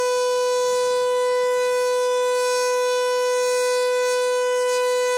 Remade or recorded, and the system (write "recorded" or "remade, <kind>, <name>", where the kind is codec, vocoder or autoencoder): recorded